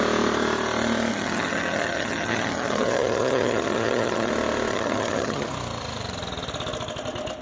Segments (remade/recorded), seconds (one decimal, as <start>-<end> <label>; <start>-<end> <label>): 0.0-1.1 recorded; 1.1-4.3 remade; 4.3-4.7 recorded; 4.7-5.5 remade; 5.5-7.4 recorded